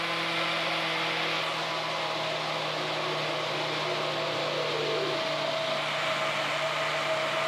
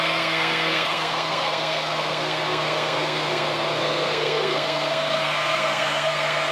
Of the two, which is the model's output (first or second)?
second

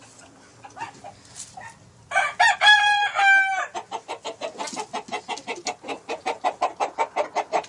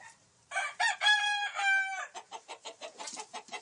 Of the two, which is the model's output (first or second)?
second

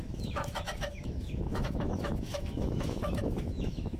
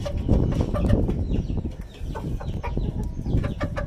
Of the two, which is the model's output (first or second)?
first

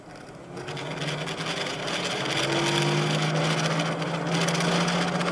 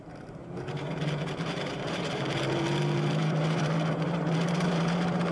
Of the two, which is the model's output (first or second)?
second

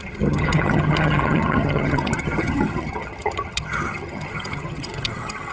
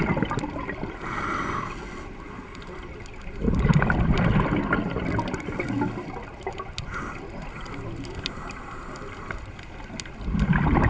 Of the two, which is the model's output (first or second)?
first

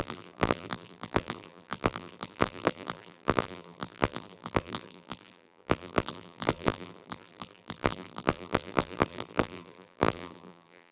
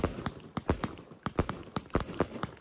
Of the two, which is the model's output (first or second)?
first